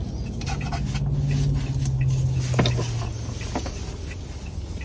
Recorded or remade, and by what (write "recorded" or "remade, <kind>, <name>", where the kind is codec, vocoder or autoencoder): recorded